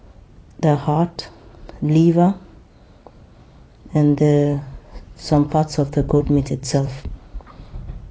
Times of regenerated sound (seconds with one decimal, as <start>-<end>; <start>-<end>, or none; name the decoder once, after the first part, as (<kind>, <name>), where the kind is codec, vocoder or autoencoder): 3.7-8.1 (vocoder, Vocos)